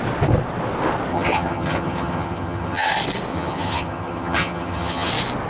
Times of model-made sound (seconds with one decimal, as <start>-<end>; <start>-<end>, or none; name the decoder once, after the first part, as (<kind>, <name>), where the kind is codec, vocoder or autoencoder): 1.1-2.9 (vocoder, HiFi-GAN); 3.3-5.1